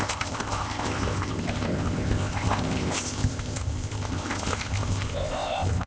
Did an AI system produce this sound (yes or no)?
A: yes